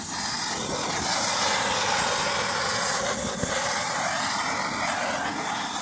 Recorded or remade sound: recorded